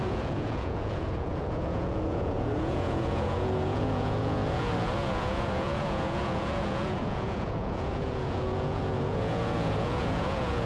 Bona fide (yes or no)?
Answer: no